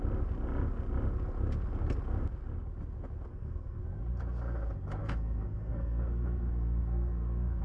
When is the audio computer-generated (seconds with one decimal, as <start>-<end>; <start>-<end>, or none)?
3.3-3.8; 5.0-7.6